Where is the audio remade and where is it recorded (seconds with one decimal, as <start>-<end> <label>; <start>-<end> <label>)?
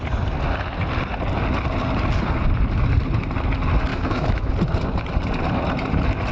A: 0.0-3.9 recorded; 3.9-4.5 remade; 4.5-6.3 recorded